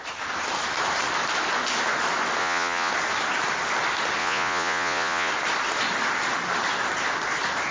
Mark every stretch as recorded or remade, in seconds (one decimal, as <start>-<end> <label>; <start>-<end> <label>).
0.0-2.4 recorded; 2.4-2.9 remade; 2.9-4.2 recorded; 4.2-5.3 remade; 5.3-7.7 recorded